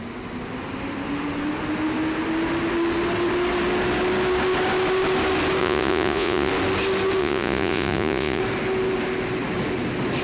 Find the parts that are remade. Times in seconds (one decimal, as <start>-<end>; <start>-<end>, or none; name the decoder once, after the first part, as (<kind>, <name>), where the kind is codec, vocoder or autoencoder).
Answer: 5.6-6.5 (vocoder, Vocos); 7.2-8.4